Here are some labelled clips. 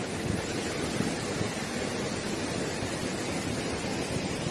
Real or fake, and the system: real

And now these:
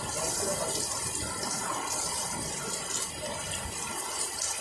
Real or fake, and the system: real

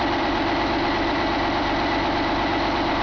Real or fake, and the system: fake, vocoder, BigVGAN v2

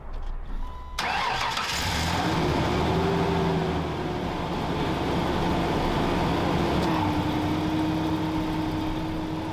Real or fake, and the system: real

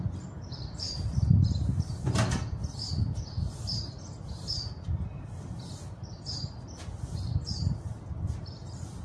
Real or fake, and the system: real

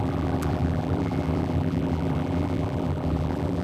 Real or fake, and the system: fake, vocoder, BigVGAN v2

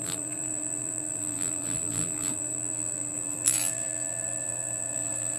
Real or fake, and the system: fake, vocoder, BigVGAN v2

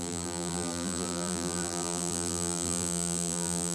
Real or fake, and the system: fake, vocoder, BigVGAN v2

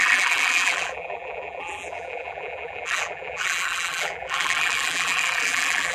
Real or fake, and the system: fake, vocoder, BigVGAN v2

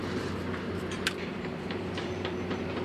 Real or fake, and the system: fake, vocoder, BigVGAN v2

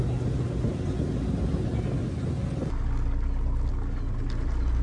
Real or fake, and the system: real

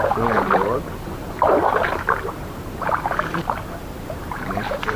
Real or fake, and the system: fake, vocoder, BigVGAN v2